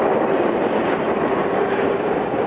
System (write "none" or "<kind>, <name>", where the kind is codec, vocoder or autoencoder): none